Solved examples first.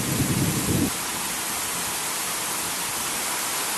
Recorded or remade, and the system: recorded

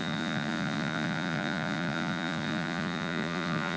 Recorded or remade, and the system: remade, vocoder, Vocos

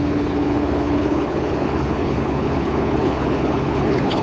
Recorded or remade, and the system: remade, codec, HILCodec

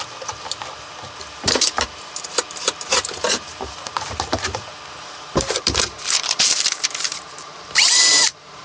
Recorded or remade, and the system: remade, vocoder, BigVGAN v2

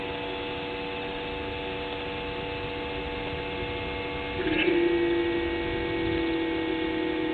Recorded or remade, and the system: recorded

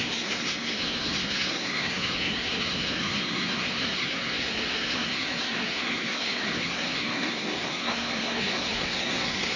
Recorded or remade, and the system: remade, codec, SNAC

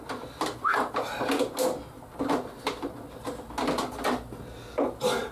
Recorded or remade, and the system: recorded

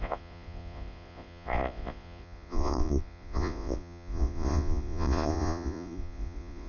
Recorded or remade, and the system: remade, vocoder, Vocos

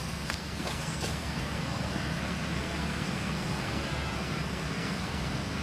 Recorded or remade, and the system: remade, codec, SNAC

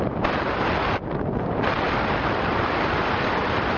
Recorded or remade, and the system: recorded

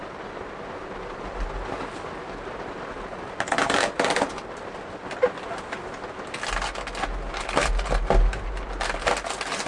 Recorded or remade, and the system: recorded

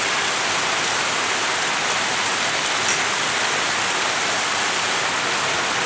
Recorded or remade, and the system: recorded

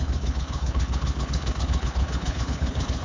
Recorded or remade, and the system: remade, codec, HILCodec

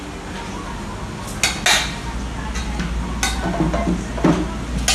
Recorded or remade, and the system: recorded